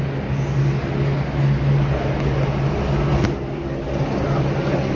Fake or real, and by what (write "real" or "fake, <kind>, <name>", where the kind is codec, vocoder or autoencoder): real